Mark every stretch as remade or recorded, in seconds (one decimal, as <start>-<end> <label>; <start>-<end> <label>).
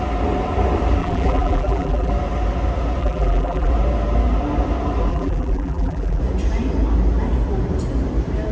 0.0-1.0 recorded; 1.0-2.1 remade; 2.1-3.0 recorded; 3.0-3.7 remade; 3.7-5.1 recorded; 5.1-6.2 remade; 6.2-8.5 recorded